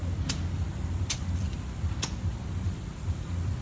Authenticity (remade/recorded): recorded